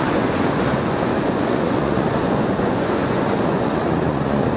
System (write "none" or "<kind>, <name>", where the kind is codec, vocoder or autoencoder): vocoder, Vocos